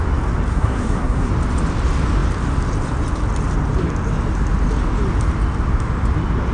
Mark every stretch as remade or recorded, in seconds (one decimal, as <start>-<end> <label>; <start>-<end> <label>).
0.0-0.5 recorded; 0.5-1.3 remade; 1.3-6.5 recorded